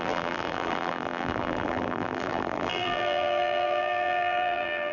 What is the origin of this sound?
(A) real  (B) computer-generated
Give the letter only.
B